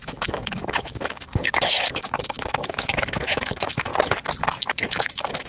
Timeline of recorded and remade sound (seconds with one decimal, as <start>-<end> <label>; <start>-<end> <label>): 0.0-3.9 remade; 3.9-4.6 recorded; 4.6-5.5 remade